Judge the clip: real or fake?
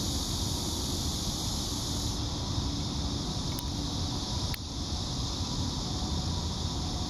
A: fake